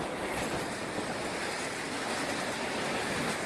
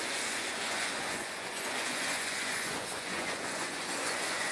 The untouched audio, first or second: first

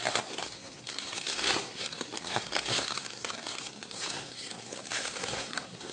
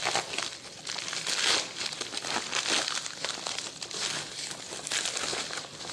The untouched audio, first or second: second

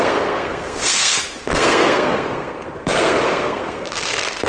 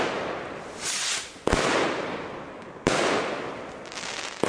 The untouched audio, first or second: second